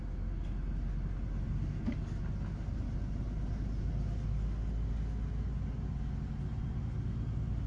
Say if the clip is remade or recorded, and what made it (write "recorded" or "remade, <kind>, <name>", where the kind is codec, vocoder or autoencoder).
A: recorded